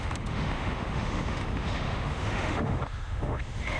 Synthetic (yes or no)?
yes